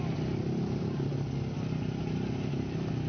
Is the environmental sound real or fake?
real